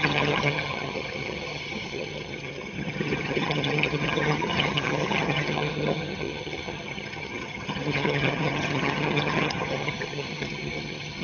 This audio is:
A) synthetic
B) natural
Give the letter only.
A